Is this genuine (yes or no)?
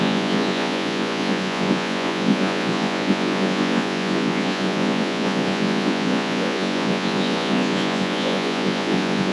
no